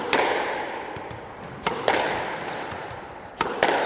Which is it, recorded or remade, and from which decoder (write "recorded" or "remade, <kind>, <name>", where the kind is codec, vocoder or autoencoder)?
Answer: remade, vocoder, BigVGAN v2